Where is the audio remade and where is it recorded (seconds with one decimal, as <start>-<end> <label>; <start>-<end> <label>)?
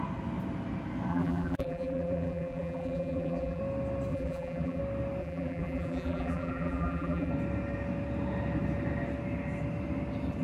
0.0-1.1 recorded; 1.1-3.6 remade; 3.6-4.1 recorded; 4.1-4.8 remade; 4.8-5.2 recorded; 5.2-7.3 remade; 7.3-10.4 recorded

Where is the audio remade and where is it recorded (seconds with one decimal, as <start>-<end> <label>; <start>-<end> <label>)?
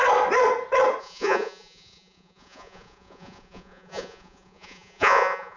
0.0-1.0 recorded; 1.0-5.6 remade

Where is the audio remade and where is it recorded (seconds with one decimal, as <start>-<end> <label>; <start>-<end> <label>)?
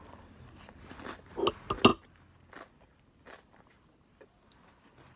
0.0-5.2 recorded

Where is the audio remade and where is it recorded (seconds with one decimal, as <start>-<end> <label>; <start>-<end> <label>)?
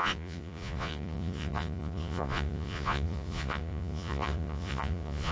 0.0-5.3 remade